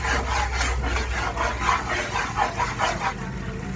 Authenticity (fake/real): real